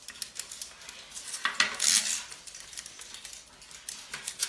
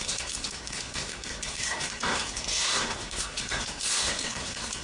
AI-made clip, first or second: second